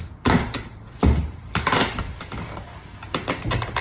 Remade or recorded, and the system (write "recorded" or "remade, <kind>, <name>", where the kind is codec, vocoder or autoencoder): recorded